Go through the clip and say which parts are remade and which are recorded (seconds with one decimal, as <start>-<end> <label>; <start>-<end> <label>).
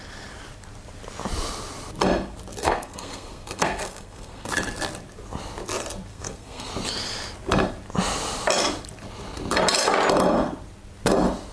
0.0-2.6 recorded; 2.6-4.5 remade; 4.5-6.1 recorded; 6.1-6.7 remade; 6.7-11.5 recorded